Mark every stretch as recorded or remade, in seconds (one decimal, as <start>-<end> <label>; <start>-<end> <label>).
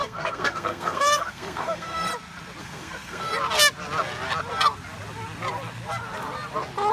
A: 0.0-2.1 remade; 2.1-2.6 recorded; 2.6-3.3 remade; 3.3-6.9 recorded